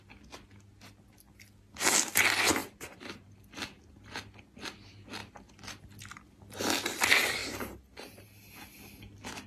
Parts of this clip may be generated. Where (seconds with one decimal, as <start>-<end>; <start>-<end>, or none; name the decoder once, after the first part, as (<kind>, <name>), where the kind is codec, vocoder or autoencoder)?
2.6-3.3 (vocoder, BigVGAN v2); 7.4-8.5

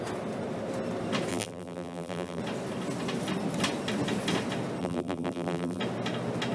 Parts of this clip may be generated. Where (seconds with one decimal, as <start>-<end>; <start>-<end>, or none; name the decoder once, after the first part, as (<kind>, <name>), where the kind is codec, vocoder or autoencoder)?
1.3-2.4 (vocoder, BigVGAN v2); 4.8-5.8